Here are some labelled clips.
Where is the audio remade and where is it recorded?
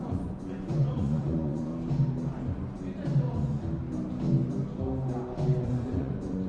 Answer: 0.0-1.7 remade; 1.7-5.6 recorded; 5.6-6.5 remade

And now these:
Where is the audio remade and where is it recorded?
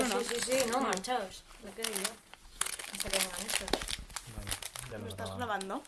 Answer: 0.0-2.0 recorded; 2.0-2.8 remade; 2.8-5.9 recorded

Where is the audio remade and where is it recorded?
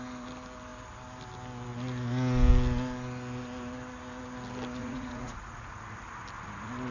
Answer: 0.0-4.8 recorded; 4.8-5.8 remade; 5.8-6.9 recorded